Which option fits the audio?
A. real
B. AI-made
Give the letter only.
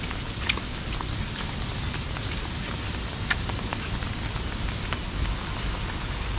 A